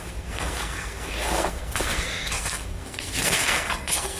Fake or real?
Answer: fake